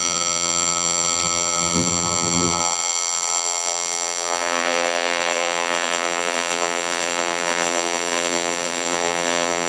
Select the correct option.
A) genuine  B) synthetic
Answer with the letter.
B